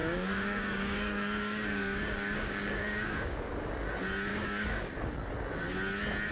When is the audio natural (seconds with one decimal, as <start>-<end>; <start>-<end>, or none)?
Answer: 3.7-4.3; 4.9-6.3